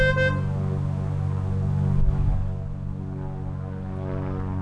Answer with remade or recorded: recorded